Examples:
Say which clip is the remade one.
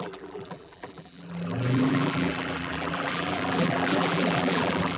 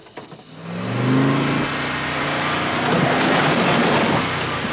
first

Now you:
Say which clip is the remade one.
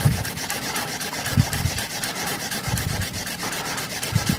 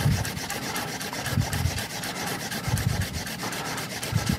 first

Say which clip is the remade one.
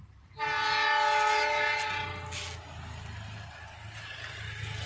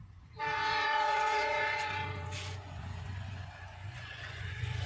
second